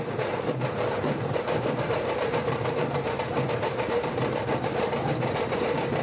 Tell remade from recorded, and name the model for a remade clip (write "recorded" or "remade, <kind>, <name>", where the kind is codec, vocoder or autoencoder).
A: remade, vocoder, BigVGAN v2